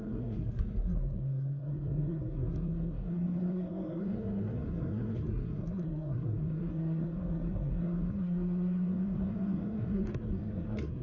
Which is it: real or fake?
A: fake